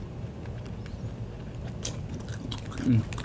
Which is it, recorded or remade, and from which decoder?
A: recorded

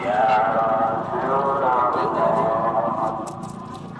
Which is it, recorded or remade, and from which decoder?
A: remade, vocoder, BigVGAN v2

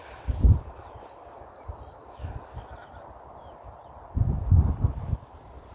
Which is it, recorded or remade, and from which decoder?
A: recorded